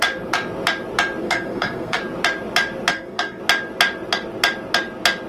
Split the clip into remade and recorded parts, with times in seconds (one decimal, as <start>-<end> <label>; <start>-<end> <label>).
0.0-1.2 recorded; 1.2-2.0 remade; 2.0-2.9 recorded; 2.9-3.4 remade; 3.4-5.3 recorded